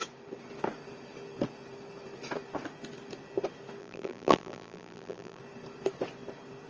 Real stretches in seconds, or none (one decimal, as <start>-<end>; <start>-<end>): 0.0-3.8; 5.4-6.7